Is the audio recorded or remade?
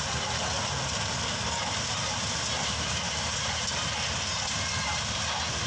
recorded